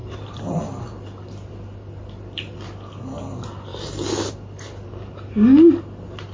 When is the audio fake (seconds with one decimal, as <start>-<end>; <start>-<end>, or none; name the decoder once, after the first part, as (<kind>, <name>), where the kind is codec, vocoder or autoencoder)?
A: 0.0-0.6 (vocoder, BigVGAN v2)